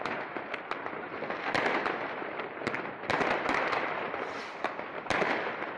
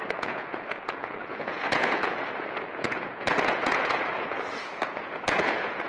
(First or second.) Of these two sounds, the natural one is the first